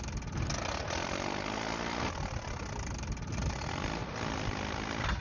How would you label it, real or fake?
real